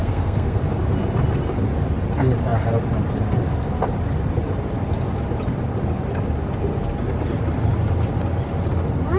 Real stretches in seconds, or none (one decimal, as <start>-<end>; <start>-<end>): 0.6-9.2